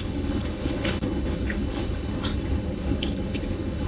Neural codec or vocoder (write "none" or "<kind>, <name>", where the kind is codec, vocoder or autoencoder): codec, HILCodec